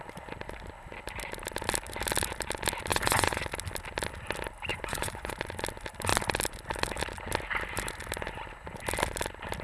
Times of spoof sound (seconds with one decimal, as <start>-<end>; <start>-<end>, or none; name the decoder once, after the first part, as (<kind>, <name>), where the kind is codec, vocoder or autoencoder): 2.9-3.4 (vocoder, Vocos); 4.7-5.3